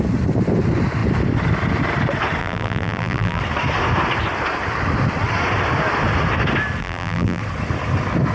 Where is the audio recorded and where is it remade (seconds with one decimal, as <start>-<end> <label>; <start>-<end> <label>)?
0.0-2.4 recorded; 2.4-3.4 remade; 3.4-6.8 recorded; 6.8-7.4 remade; 7.4-8.3 recorded